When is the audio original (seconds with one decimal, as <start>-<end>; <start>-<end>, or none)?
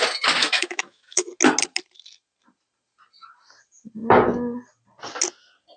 0.0-0.4; 1.3-5.8